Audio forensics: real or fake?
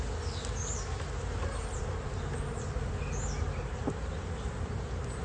real